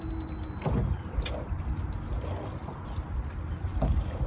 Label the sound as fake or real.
real